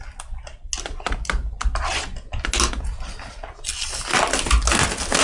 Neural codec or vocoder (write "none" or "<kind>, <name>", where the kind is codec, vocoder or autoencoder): none